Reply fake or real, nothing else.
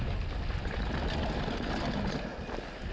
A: real